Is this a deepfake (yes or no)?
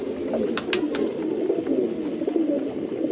no